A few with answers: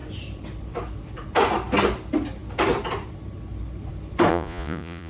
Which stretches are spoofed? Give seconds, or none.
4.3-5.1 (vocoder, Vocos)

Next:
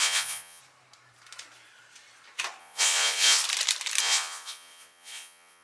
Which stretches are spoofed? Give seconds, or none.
0.0-0.6 (vocoder, Vocos); 2.6-3.4; 4.0-5.6

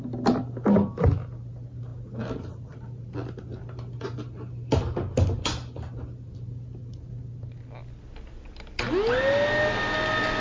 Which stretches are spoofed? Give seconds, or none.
none

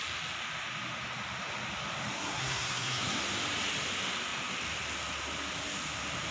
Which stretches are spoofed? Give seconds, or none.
2.1-3.2 (codec, SNAC)

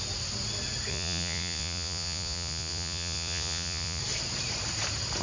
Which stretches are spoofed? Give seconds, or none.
0.9-4.0 (vocoder, Vocos)